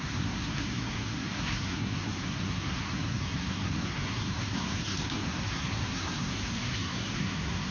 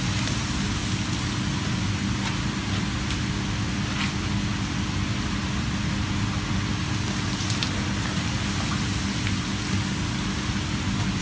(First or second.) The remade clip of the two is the first